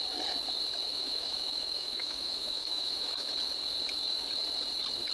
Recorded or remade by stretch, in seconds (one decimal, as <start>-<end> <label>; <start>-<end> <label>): 0.0-0.9 recorded; 0.9-3.3 remade; 3.3-5.1 recorded